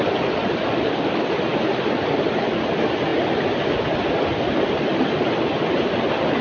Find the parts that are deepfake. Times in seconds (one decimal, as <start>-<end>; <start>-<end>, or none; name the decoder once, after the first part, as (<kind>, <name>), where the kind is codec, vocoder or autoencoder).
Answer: none